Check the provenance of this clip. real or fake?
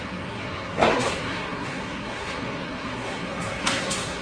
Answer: fake